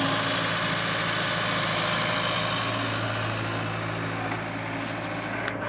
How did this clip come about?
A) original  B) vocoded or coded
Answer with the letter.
A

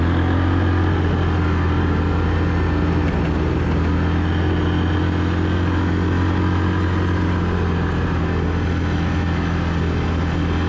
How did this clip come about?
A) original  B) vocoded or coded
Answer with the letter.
A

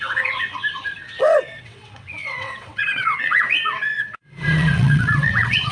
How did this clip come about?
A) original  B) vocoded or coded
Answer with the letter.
B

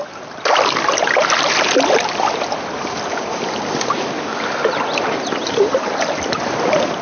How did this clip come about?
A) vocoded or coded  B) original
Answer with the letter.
B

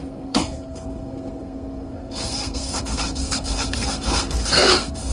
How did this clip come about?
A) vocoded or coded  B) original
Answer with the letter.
A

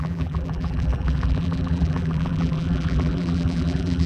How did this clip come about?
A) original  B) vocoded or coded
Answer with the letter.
B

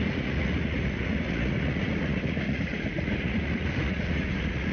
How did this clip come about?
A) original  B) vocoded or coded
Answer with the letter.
B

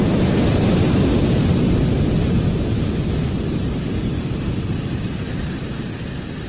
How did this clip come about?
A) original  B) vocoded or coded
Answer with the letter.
A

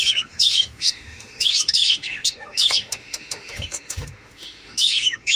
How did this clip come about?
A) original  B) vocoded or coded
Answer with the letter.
B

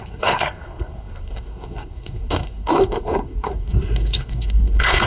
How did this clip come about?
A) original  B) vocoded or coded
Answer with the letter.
B